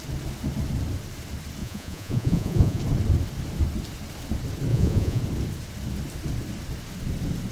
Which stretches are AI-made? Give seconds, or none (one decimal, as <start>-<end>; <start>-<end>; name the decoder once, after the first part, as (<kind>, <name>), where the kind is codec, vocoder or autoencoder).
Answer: 1.6-2.8 (vocoder, Vocos); 4.7-5.2